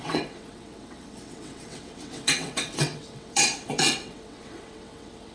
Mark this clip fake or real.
fake